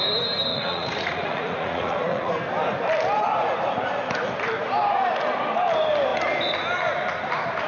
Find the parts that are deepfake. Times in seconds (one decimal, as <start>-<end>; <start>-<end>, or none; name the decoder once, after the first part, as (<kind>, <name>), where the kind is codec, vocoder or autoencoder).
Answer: 0.5-2.3 (vocoder, Vocos)